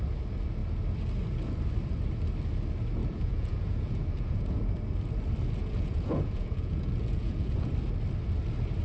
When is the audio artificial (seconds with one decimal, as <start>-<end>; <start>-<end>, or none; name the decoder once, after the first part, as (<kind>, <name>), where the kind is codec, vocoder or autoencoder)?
3.0-4.7 (vocoder, Vocos); 5.6-7.7